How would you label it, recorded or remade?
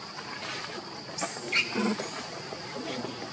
recorded